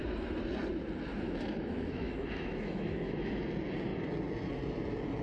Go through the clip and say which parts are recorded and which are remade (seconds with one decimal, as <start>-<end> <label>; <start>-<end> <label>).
0.0-1.1 recorded; 1.1-3.3 remade; 3.3-5.2 recorded

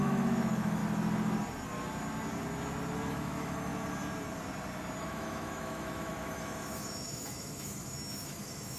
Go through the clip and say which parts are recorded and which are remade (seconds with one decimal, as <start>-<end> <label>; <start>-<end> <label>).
0.0-0.8 remade; 0.8-3.1 recorded; 3.1-3.7 remade; 3.7-5.0 recorded; 5.0-8.8 remade

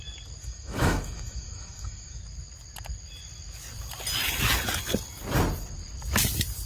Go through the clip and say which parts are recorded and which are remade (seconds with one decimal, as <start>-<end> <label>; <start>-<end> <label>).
0.0-0.4 recorded; 0.4-2.2 remade; 2.2-6.7 recorded

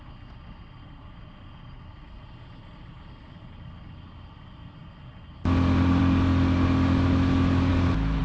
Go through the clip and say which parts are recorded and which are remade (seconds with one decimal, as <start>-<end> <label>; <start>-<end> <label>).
0.0-7.7 recorded; 7.7-8.2 remade

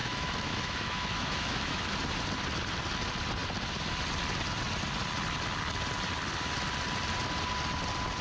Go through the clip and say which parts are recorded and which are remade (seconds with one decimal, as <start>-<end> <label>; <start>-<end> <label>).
0.0-1.9 remade; 1.9-8.2 recorded

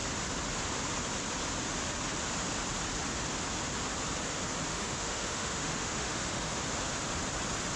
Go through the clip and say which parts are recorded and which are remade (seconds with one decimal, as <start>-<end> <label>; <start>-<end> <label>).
0.0-4.7 recorded; 4.7-6.6 remade; 6.6-7.8 recorded

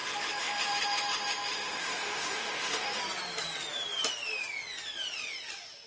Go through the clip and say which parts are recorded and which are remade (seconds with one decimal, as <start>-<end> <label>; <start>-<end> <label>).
0.0-3.0 remade; 3.0-5.9 recorded

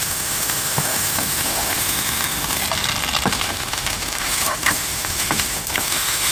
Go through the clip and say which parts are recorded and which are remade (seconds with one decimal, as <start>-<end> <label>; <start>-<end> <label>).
0.0-2.6 remade; 2.6-3.3 recorded; 3.3-6.3 remade